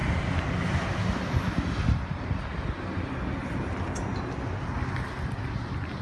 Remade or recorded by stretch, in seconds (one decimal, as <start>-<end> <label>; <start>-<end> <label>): 0.0-6.0 recorded